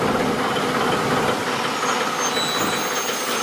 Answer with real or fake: real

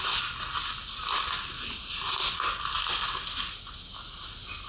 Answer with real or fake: real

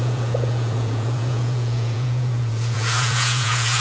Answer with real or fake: fake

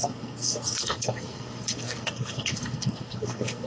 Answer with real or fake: fake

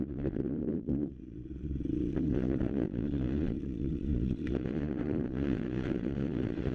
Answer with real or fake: fake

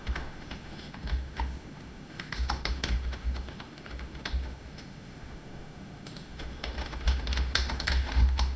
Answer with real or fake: fake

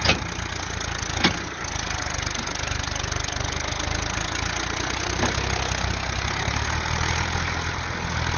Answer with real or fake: real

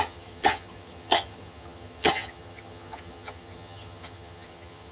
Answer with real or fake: fake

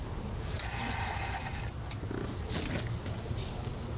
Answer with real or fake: real